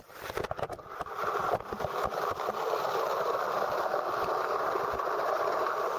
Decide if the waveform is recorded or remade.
recorded